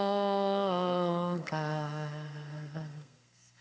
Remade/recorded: remade